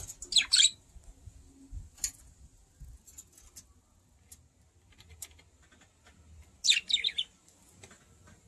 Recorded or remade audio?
recorded